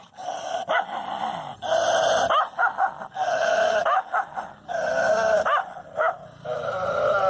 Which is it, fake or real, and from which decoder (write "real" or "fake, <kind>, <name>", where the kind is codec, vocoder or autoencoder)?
real